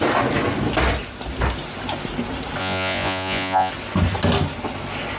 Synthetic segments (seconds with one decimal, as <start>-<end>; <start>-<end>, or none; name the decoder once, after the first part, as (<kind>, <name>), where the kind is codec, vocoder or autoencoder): 2.6-3.7 (vocoder, Vocos)